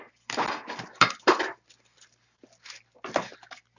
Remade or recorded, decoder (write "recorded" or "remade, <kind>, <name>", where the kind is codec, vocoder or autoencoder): recorded